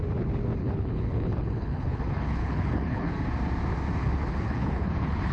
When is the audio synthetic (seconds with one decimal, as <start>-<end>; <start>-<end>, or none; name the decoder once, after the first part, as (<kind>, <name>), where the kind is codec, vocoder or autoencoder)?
0.6-3.1 (codec, HILCodec); 4.0-5.3